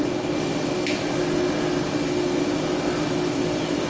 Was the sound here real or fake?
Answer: real